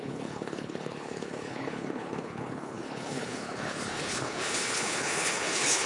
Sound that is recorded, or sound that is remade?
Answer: remade